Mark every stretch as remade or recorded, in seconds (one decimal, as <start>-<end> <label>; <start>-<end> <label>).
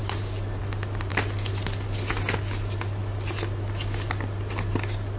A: 0.0-5.2 recorded